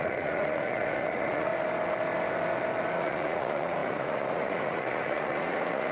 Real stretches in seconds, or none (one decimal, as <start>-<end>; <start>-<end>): 1.5-2.9